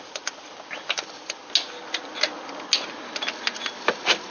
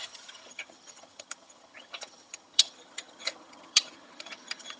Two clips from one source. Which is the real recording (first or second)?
first